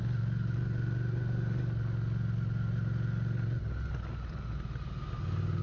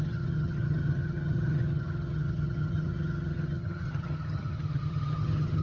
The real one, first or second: first